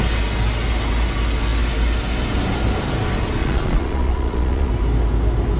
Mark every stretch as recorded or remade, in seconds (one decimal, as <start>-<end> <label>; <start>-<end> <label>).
0.0-3.4 recorded; 3.4-4.7 remade; 4.7-5.6 recorded